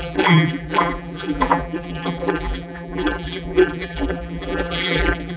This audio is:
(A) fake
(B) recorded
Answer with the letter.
A